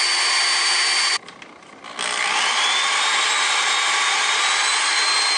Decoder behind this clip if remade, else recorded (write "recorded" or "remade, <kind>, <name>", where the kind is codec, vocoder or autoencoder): recorded